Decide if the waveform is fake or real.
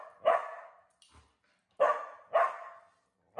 real